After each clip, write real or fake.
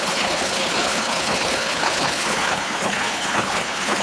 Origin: fake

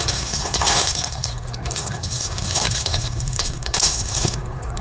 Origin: fake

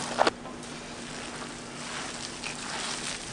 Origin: real